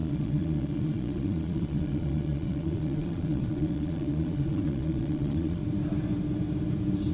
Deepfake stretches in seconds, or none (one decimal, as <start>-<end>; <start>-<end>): 0.0-5.6